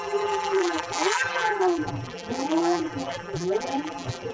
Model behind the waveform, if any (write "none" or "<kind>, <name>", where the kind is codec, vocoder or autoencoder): vocoder, BigVGAN v2